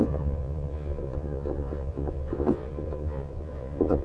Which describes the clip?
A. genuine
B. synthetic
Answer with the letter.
B